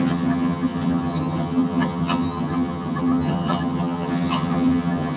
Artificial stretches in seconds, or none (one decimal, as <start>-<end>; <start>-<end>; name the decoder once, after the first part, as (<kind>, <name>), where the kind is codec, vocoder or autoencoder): 0.0-5.2 (vocoder, HiFi-GAN)